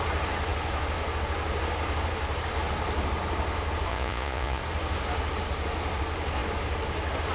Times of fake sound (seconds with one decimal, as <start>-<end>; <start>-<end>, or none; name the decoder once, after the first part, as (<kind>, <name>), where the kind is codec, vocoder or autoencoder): 3.9-4.6 (vocoder, Vocos)